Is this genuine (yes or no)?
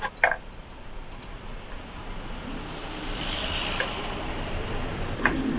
yes